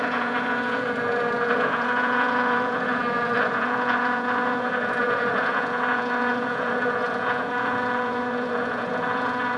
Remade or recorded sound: remade